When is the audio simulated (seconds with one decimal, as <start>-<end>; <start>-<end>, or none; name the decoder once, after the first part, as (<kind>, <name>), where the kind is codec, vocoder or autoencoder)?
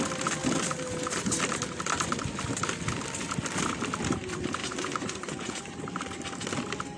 4.6-5.6 (vocoder, Vocos)